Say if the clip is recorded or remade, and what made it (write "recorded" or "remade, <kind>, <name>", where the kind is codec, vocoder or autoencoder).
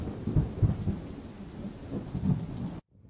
recorded